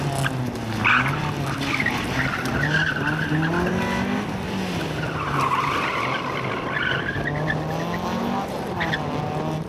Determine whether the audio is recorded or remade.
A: recorded